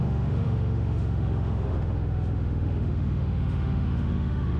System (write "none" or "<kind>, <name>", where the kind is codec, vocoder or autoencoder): autoencoder, DAC-VAE